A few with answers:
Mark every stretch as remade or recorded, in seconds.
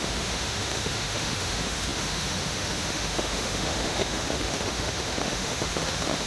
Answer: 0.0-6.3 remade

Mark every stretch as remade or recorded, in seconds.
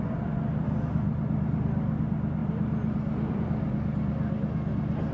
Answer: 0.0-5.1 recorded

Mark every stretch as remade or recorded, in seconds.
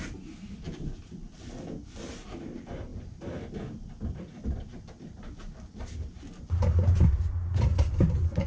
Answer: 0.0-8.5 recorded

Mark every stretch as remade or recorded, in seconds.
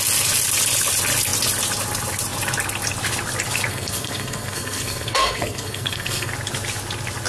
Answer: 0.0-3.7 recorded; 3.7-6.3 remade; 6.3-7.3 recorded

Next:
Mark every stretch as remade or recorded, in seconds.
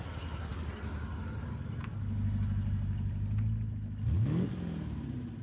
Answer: 0.0-5.4 recorded